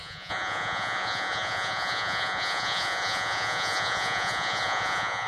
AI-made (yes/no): yes